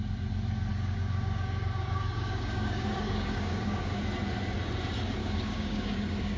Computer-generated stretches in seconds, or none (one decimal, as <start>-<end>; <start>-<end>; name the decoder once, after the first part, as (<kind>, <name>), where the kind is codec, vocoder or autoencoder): 0.7-4.0 (codec, DAC); 5.2-6.4